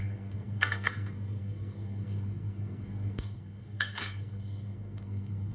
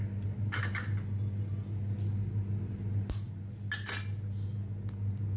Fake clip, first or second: first